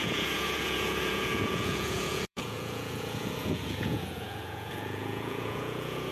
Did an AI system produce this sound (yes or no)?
yes